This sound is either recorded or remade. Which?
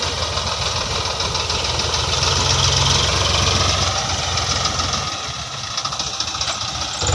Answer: recorded